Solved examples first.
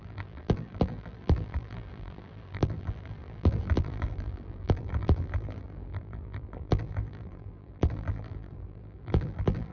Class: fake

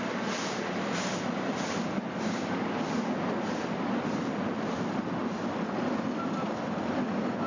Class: real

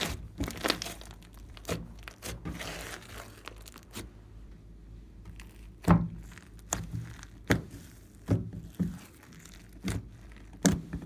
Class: real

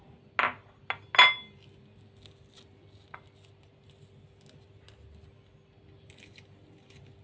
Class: real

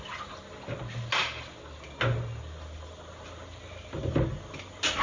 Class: real